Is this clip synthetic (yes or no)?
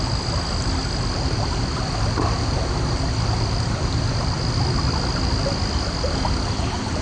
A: no